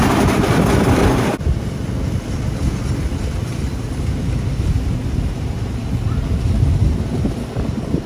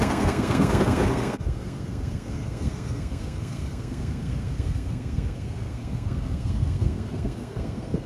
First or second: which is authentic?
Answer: first